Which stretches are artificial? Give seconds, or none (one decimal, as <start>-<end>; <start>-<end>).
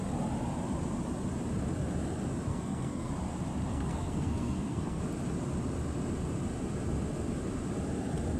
2.5-3.1; 3.7-5.0